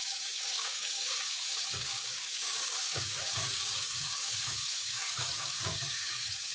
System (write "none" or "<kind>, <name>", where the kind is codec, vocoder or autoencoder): codec, DAC